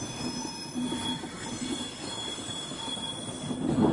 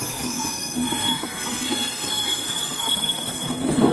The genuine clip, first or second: first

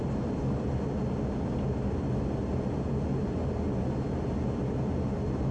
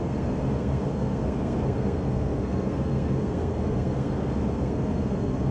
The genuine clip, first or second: first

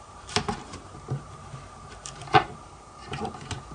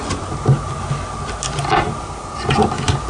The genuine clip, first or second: second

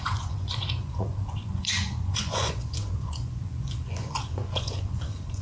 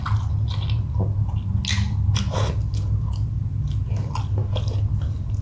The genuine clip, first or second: second